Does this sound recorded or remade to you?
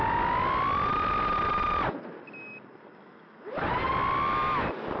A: recorded